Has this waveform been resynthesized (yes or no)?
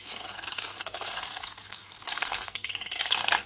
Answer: yes